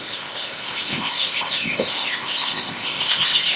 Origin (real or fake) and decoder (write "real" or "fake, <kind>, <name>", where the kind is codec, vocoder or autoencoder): fake, codec, ZipCodec